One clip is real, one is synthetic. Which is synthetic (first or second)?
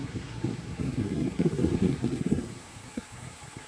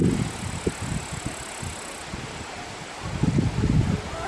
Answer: first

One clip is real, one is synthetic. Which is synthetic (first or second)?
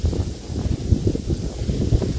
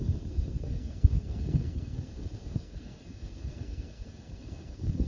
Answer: second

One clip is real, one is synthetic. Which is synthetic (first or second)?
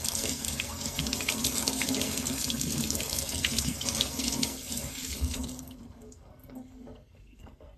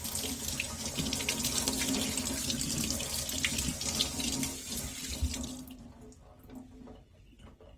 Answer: first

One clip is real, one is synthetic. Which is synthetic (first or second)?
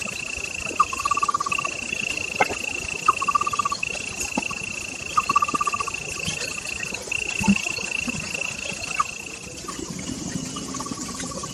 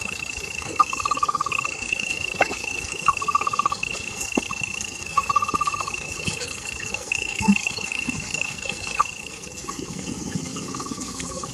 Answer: second